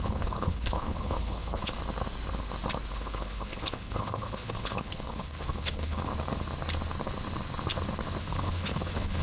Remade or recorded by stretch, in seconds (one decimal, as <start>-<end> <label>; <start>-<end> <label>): 0.0-1.8 remade; 1.8-2.9 recorded; 2.9-6.1 remade; 6.1-8.2 recorded; 8.2-9.2 remade